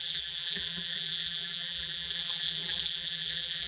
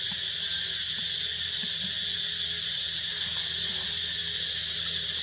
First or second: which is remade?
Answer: first